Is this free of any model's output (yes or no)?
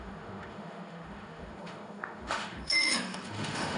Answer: no